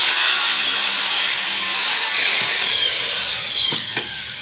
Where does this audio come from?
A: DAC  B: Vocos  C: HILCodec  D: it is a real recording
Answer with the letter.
A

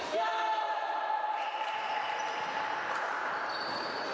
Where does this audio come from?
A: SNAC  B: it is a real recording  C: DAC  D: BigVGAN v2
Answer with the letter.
D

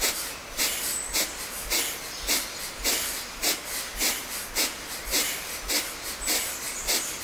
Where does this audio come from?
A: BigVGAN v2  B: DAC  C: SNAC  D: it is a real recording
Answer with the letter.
D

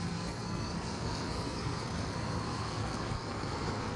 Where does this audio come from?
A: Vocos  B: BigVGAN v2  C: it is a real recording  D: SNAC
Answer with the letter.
D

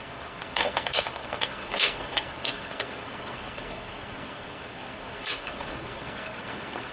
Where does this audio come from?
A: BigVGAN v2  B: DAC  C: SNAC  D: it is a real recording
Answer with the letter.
C